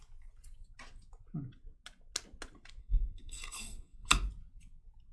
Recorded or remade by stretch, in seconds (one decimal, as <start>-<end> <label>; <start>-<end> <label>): 0.0-2.8 recorded; 2.8-4.1 remade; 4.1-5.1 recorded